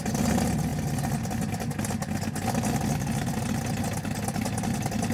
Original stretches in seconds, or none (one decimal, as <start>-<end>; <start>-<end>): 0.0-5.1